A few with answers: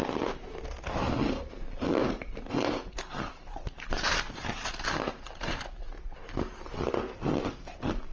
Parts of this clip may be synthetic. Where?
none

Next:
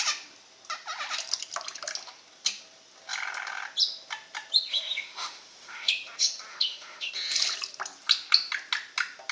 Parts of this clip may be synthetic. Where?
4.7-5.9 (autoencoder, DAC-VAE); 6.5-7.1

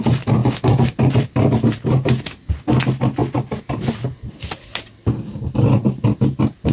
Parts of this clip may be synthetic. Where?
none